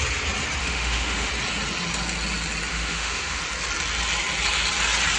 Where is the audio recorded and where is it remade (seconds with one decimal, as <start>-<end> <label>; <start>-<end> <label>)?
0.0-0.6 recorded; 0.6-1.3 remade; 1.3-2.7 recorded; 2.7-3.4 remade; 3.4-5.2 recorded